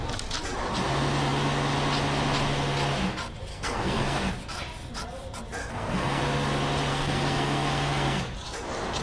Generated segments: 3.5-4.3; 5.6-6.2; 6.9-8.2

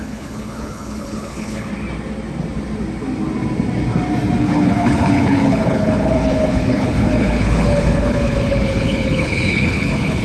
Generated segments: 0.0-1.7; 4.4-10.2

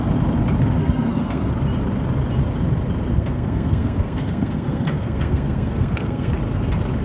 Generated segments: 0.8-1.5; 3.1-6.3

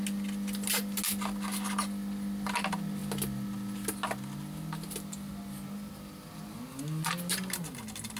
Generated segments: none

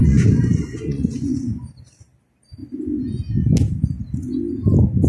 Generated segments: 0.0-1.6